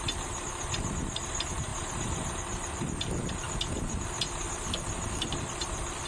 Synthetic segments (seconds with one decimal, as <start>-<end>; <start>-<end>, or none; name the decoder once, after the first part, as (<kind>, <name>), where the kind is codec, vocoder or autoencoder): none